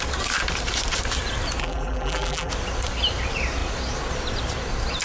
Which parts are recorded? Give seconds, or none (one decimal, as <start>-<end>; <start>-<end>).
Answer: 0.0-1.6; 2.5-5.0